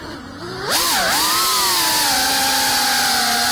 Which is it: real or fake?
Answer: real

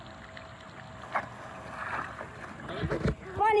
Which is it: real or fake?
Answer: real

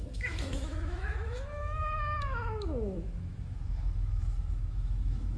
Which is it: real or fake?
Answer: fake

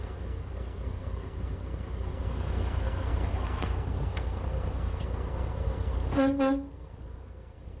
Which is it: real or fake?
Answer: fake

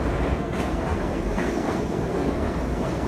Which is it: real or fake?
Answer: fake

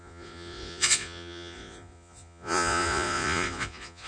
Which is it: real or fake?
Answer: fake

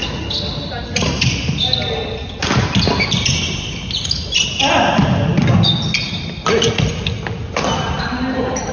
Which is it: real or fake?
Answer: real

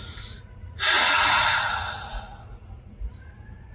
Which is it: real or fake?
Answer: fake